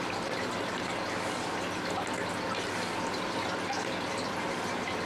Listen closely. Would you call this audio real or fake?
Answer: real